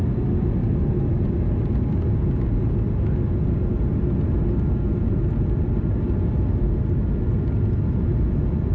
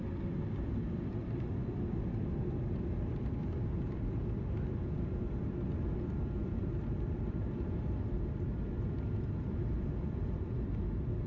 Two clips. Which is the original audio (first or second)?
first